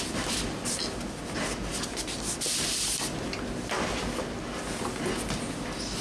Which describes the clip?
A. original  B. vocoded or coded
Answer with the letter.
A